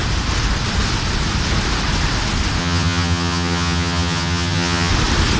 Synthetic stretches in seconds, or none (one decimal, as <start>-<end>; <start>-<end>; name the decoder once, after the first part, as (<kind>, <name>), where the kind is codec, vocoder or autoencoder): 2.6-4.9 (vocoder, HiFi-GAN)